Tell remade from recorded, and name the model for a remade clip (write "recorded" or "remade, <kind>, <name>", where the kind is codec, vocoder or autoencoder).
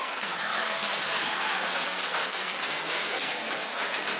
remade, codec, SNAC